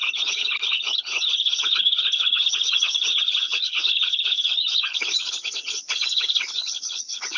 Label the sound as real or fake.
fake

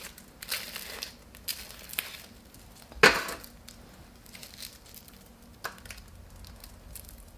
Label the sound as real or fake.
real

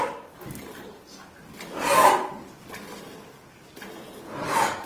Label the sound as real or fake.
real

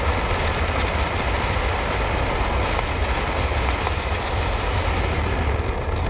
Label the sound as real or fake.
real